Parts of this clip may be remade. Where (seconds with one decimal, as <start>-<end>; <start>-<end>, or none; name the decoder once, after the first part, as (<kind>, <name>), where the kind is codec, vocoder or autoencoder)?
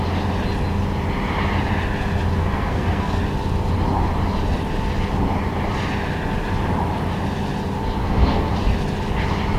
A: 2.4-3.2 (codec, SNAC); 8.0-8.5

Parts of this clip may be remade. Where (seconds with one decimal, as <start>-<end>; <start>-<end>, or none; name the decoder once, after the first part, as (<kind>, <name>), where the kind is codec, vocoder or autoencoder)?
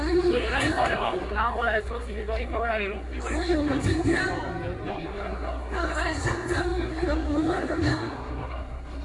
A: 0.0-4.2 (codec, SNAC); 4.9-9.0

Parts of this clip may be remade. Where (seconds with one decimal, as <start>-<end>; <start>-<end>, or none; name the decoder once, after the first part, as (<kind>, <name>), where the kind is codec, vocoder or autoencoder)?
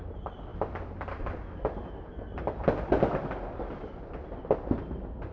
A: none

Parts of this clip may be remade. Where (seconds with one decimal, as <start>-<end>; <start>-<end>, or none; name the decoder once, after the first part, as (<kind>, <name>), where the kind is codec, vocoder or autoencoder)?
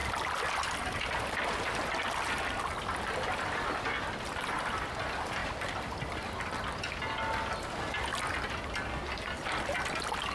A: none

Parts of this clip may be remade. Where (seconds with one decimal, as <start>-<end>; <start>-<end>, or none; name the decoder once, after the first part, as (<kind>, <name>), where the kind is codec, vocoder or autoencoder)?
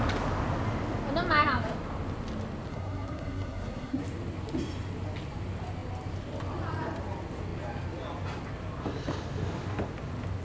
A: 2.7-4.0 (codec, SNAC)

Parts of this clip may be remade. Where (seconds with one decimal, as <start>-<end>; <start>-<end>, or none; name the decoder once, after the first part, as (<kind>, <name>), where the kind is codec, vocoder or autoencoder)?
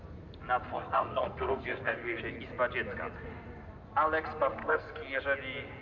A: 0.7-2.2 (codec, SNAC); 4.6-5.2